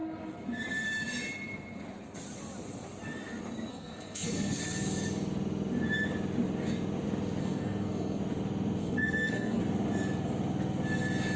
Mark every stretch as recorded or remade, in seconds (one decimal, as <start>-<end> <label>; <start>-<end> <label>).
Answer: 0.0-3.7 recorded; 3.7-4.6 remade; 4.6-7.4 recorded; 7.4-8.2 remade; 8.2-8.8 recorded; 8.8-9.6 remade; 9.6-11.4 recorded